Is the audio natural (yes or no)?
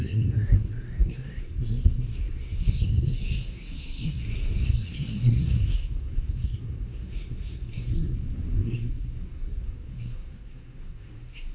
no